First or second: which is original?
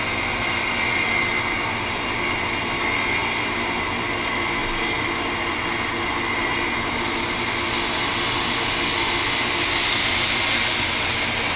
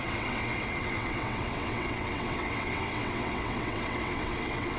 first